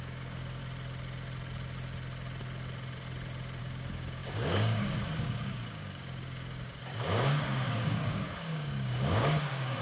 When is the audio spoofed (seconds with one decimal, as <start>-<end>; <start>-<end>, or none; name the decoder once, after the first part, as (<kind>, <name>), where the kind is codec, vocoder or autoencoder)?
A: 0.0-0.6 (codec, DAC); 3.6-9.8